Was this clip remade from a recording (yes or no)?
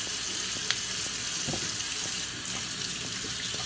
no